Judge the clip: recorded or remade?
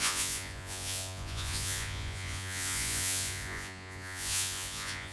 remade